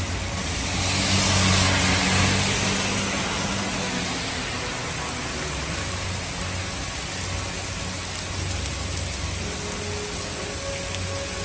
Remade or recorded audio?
recorded